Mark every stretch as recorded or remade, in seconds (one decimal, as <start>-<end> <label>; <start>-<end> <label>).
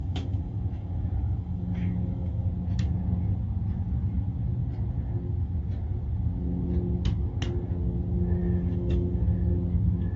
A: 0.0-2.5 remade; 2.5-8.4 recorded; 8.4-9.2 remade; 9.2-10.2 recorded